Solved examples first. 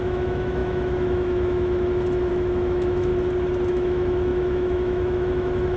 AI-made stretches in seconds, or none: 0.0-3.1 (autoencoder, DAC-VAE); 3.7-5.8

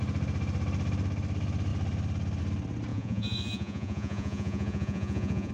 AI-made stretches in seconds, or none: 2.9-5.5 (vocoder, Vocos)

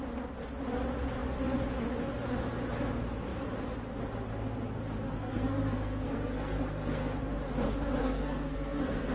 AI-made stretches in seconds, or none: 5.1-7.2 (codec, SNAC); 8.0-9.1

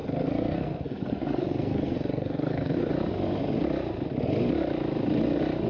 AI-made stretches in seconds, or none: 0.0-2.9 (codec, SNAC)

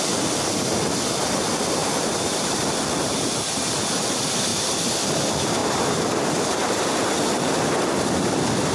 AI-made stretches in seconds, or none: 1.8-2.7 (vocoder, BigVGAN v2); 4.5-5.1; 5.6-6.8

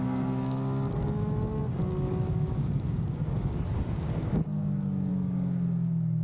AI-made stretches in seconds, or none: 0.0-6.2 (codec, DAC)

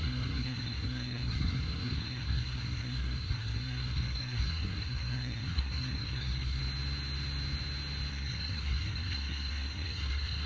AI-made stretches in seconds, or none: 0.0-6.6 (codec, SNAC); 8.1-10.5

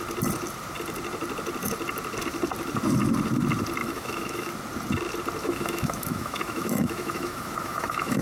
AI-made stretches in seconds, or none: 3.8-4.5 (autoencoder, DAC-VAE); 5.4-8.2